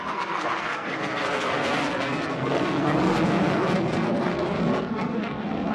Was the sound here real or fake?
fake